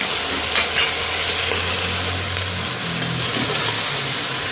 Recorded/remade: recorded